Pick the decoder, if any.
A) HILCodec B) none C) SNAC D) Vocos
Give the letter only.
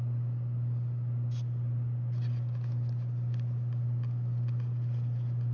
B